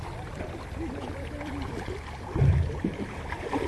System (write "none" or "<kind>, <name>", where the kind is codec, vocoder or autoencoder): vocoder, BigVGAN v2